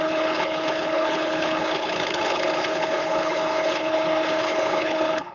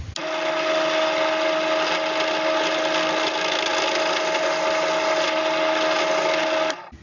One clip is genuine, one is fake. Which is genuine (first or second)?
second